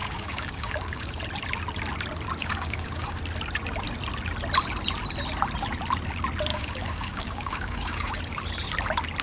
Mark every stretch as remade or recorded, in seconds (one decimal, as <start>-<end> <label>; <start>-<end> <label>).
0.0-1.2 remade; 1.2-2.4 recorded; 2.4-3.2 remade; 3.2-6.5 recorded; 6.5-8.2 remade; 8.2-9.2 recorded